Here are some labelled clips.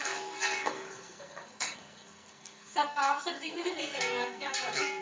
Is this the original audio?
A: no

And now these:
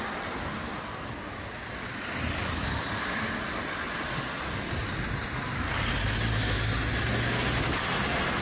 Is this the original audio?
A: yes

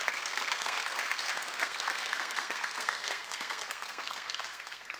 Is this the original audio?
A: no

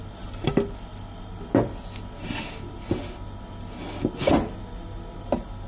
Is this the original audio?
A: yes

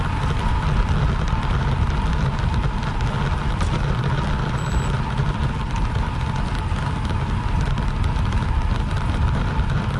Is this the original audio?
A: yes